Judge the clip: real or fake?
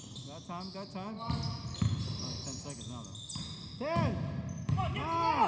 real